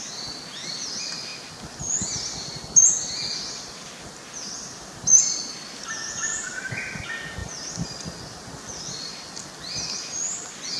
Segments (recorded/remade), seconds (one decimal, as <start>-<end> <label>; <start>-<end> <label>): 0.0-10.8 recorded